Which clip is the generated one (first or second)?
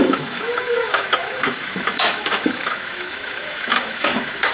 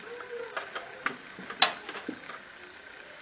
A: first